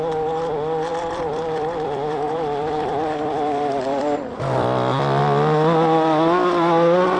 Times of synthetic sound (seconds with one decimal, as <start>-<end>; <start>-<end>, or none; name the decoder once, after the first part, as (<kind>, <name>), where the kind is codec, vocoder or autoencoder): 0.9-5.2 (vocoder, BigVGAN v2)